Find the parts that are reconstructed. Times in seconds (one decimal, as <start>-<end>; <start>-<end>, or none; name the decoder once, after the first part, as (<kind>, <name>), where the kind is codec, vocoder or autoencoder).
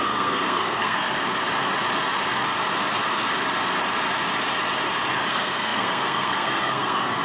0.0-1.0 (codec, SNAC); 5.3-7.2